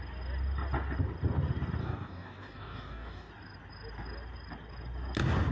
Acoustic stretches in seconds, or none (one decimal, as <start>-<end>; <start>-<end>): 0.0-1.8; 3.3-5.5